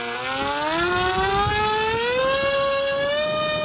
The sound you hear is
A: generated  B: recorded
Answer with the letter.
B